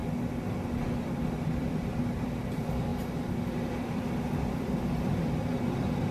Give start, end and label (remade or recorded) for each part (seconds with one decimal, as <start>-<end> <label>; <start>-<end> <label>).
0.0-1.1 recorded; 1.1-2.9 remade; 2.9-3.9 recorded; 3.9-6.1 remade